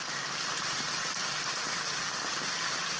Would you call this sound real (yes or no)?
yes